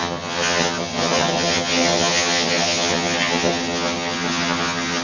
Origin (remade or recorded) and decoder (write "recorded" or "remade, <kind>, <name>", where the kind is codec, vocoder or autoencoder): remade, vocoder, HiFi-GAN